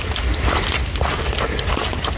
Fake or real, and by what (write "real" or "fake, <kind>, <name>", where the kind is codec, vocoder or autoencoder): real